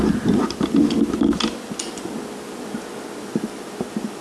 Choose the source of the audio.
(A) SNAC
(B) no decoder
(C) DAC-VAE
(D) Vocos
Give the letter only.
B